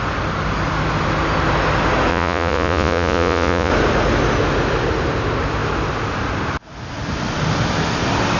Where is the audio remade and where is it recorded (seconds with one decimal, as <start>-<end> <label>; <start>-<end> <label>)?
0.0-2.1 recorded; 2.1-3.7 remade; 3.7-8.4 recorded